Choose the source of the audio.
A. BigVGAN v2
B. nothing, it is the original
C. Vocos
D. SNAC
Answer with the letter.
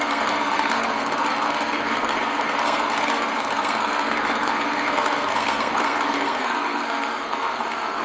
D